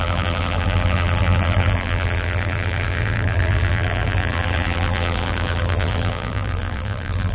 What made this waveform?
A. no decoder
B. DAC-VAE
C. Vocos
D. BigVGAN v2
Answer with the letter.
D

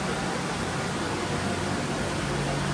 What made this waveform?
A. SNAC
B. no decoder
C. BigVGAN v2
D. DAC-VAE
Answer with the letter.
B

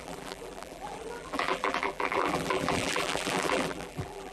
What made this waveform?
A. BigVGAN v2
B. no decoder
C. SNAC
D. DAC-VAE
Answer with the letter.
A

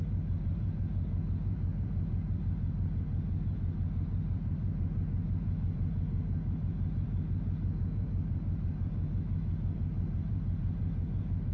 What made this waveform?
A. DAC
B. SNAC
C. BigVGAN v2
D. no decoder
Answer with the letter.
C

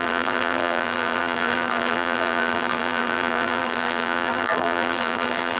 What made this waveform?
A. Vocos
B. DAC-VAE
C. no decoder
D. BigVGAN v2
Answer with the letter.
D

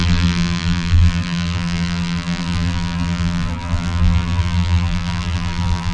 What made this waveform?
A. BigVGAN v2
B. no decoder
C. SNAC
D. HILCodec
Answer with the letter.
A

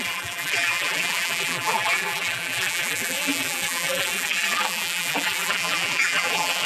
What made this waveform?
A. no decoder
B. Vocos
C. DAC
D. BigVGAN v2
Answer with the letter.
D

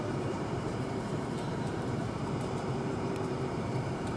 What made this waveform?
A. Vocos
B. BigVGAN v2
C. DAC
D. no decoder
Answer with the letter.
B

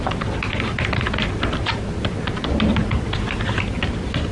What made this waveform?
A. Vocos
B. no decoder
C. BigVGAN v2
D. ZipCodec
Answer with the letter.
B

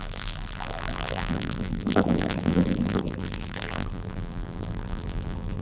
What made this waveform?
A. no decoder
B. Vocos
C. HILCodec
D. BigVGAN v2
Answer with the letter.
D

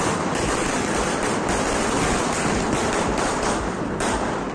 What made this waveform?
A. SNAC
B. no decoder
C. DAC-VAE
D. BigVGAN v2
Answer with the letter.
D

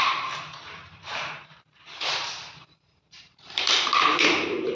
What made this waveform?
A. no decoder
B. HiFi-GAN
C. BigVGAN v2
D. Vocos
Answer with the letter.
C